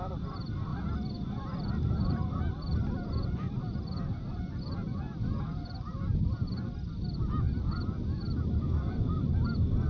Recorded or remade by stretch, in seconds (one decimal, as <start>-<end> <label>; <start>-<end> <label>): 0.0-0.7 remade; 0.7-1.9 recorded; 1.9-9.9 remade